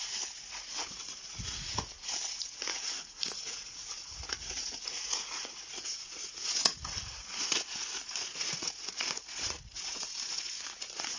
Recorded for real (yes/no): no